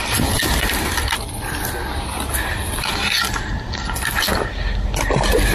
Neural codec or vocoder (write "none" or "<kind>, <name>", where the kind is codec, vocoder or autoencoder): none